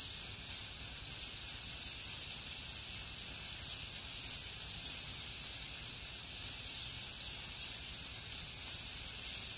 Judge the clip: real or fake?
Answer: real